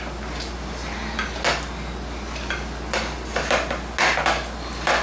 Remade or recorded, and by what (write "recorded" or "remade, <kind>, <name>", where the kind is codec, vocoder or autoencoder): recorded